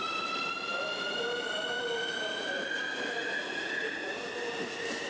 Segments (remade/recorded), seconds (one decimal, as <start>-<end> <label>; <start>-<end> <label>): 0.0-3.2 recorded; 3.2-4.2 remade; 4.2-5.1 recorded